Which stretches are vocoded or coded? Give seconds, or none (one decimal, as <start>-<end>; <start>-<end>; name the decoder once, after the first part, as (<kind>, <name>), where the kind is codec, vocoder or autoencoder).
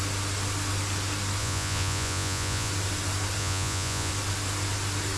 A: 1.4-2.7 (vocoder, Vocos); 3.4-4.1